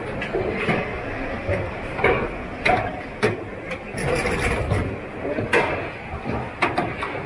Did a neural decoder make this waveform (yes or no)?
no